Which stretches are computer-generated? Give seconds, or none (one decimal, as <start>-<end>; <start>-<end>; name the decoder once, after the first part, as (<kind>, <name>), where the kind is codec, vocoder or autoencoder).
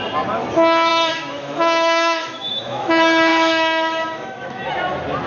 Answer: 0.9-2.9 (autoencoder, DAC-VAE); 3.3-4.7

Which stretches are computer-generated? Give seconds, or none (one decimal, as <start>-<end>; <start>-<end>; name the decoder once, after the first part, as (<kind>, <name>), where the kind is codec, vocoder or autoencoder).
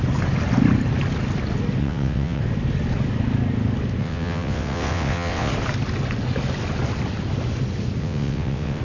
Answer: 1.8-2.4 (vocoder, WaveNeXt); 4.0-5.5; 8.0-8.8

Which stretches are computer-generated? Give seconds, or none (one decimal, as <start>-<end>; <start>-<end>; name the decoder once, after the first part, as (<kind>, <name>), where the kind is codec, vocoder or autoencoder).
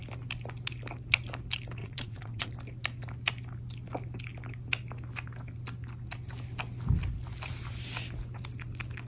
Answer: 1.8-2.5 (vocoder, WaveNeXt)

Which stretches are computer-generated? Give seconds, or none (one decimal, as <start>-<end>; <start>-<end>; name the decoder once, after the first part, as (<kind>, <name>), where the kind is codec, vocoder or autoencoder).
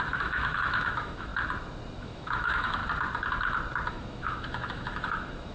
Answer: 0.0-1.3 (autoencoder, DAC-VAE); 2.0-2.8; 3.9-5.5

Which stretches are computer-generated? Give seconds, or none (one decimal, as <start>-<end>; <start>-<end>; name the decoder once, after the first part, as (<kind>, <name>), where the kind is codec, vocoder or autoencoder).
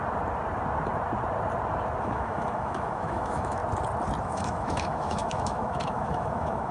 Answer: 2.0-3.6 (autoencoder, DAC-VAE); 4.2-6.7